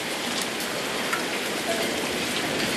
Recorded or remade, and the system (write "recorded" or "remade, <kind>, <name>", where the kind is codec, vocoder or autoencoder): recorded